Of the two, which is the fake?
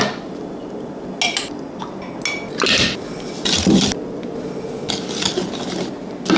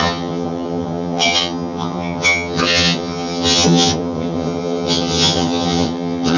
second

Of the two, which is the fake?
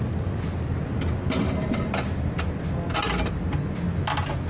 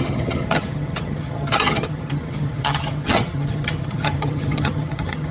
second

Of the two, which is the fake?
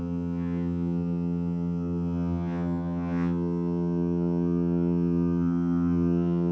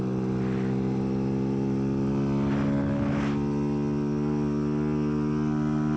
first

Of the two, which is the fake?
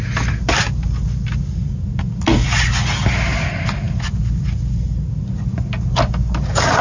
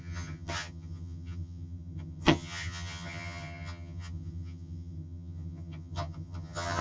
second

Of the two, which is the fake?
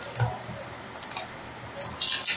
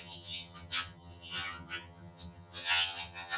second